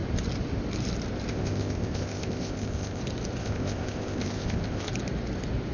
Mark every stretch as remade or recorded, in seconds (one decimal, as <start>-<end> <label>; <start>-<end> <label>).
0.0-1.3 recorded; 1.3-3.0 remade; 3.0-3.4 recorded; 3.4-4.9 remade; 4.9-5.7 recorded